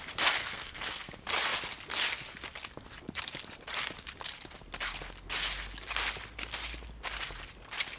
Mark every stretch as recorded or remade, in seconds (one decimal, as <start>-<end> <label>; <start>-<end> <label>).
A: 0.0-0.4 recorded; 0.4-1.1 remade; 1.1-8.0 recorded